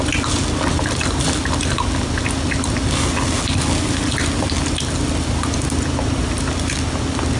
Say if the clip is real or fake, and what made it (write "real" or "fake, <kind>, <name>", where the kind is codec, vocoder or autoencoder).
real